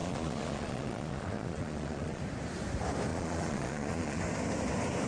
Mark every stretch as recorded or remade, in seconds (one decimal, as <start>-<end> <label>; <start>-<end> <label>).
0.0-2.2 remade; 2.2-3.1 recorded; 3.1-4.2 remade; 4.2-5.1 recorded